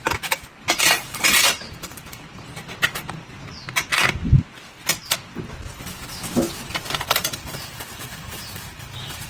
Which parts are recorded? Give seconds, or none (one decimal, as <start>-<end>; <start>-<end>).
0.0-1.4; 2.4-7.2